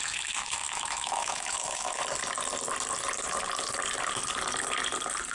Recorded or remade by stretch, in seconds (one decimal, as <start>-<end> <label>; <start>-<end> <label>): 0.0-2.0 remade; 2.0-5.3 recorded